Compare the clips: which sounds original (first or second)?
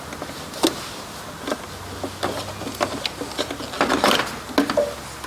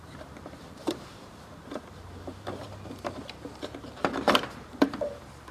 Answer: first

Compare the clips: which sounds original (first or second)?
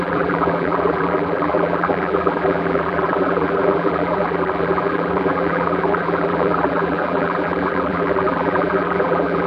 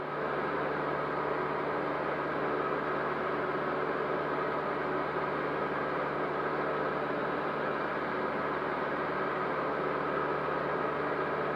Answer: second